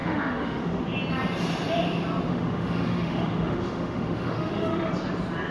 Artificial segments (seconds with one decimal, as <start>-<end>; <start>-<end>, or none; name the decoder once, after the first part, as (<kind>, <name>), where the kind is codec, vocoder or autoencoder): 0.0-0.8 (autoencoder, DAC-VAE); 2.3-4.9